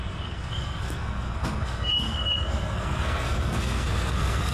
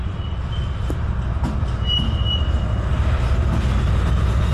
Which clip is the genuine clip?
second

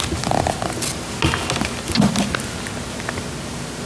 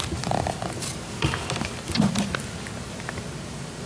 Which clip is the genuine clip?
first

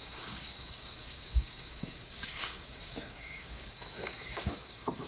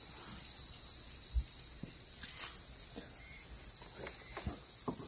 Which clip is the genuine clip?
second